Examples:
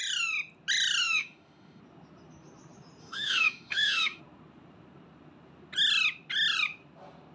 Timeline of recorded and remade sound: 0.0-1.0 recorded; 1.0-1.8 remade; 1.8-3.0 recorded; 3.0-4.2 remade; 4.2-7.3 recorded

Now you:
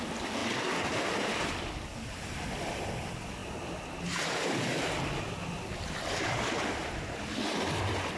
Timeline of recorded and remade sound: 0.0-8.2 remade

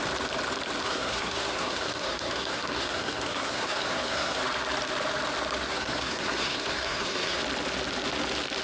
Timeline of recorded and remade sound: 0.0-0.8 recorded; 0.8-4.4 remade; 4.4-5.7 recorded; 5.7-7.4 remade; 7.4-8.6 recorded

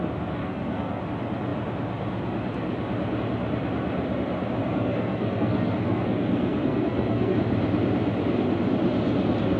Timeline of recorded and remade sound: 0.0-0.4 recorded; 0.4-1.0 remade; 1.0-4.6 recorded; 4.6-7.4 remade; 7.4-9.6 recorded

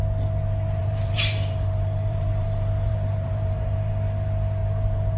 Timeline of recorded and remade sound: 0.0-0.8 recorded; 0.8-3.9 remade; 3.9-5.2 recorded

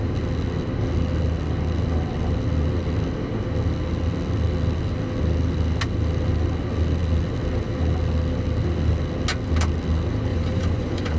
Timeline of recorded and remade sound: 0.0-10.3 recorded; 10.3-11.2 remade

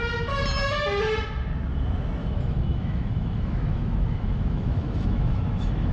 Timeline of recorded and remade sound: 0.0-2.2 recorded; 2.2-5.9 remade